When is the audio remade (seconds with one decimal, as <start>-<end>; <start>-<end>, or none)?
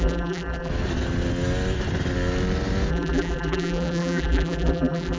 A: 0.0-0.7; 2.9-5.2